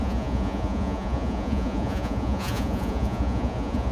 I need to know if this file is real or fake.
fake